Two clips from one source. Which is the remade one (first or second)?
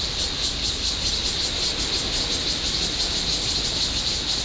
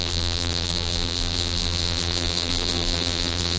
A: second